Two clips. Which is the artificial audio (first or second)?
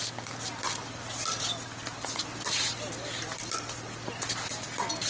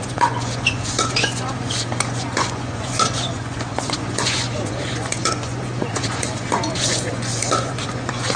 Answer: second